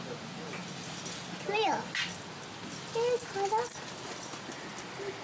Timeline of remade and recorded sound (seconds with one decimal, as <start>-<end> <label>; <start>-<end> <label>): 0.0-5.2 recorded